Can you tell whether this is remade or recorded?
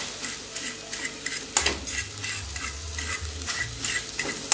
recorded